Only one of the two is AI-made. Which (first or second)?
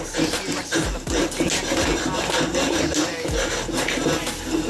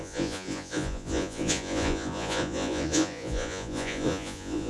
second